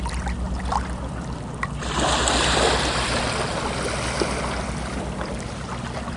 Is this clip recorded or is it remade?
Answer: recorded